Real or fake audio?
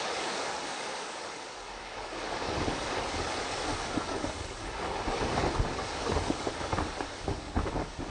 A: fake